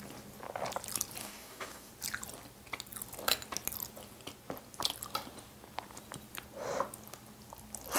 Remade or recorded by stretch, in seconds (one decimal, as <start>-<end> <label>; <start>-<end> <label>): 0.0-1.2 recorded; 1.2-1.9 remade; 1.9-8.0 recorded